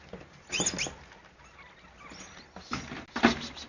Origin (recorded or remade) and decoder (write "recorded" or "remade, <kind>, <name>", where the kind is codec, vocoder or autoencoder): recorded